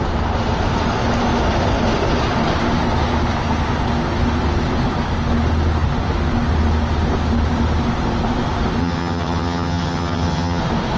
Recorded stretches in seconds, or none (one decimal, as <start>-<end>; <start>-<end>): 0.0-8.8; 10.6-11.0